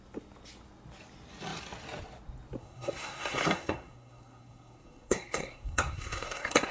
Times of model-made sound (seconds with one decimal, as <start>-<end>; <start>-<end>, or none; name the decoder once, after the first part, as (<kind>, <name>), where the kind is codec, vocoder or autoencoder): 2.6-6.7 (codec, SNAC)